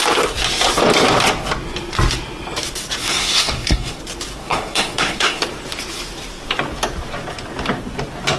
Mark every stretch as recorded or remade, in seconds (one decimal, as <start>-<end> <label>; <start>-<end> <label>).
0.0-3.0 recorded; 3.0-4.0 remade; 4.0-4.4 recorded; 4.4-5.4 remade; 5.4-8.4 recorded